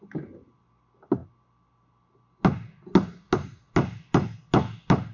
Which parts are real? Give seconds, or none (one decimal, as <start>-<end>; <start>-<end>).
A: 0.0-5.1